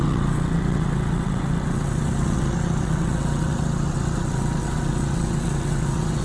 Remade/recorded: remade